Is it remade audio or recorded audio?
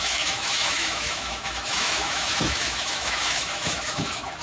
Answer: remade